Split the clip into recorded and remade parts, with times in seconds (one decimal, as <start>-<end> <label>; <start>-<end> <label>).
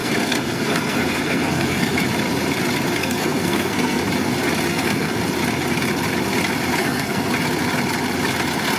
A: 0.0-2.1 remade; 2.1-3.0 recorded; 3.0-4.0 remade; 4.0-4.7 recorded; 4.7-5.2 remade; 5.2-6.8 recorded; 6.8-7.3 remade; 7.3-8.8 recorded